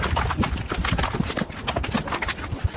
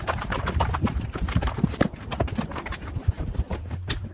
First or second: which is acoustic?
first